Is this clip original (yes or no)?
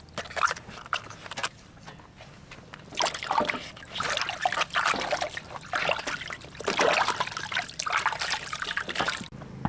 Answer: yes